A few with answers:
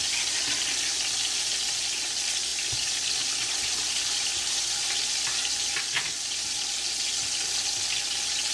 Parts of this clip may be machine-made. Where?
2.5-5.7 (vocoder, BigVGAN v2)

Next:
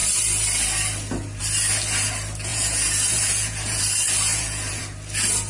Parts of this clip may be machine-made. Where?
2.5-3.8 (vocoder, Vocos); 4.3-4.8

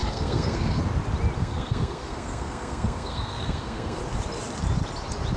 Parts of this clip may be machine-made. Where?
0.0-0.8 (codec, SNAC); 1.4-4.0

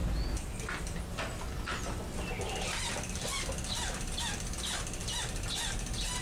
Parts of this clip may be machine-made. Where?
none

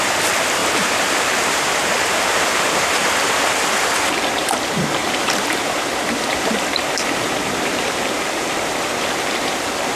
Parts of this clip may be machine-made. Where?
0.6-3.5 (vocoder, BigVGAN v2); 5.0-8.7

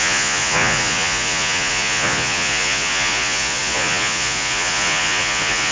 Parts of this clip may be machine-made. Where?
0.0-5.7 (vocoder, Vocos)